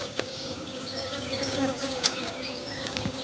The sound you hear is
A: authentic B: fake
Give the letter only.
B